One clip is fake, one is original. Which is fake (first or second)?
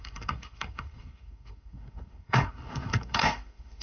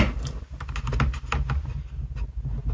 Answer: first